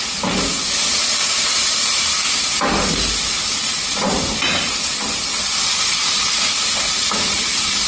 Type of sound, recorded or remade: recorded